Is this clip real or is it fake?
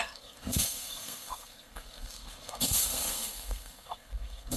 fake